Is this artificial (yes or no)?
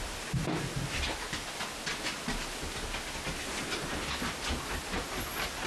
no